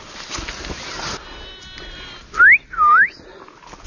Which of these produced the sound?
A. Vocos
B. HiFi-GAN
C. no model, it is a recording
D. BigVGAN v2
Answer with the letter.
C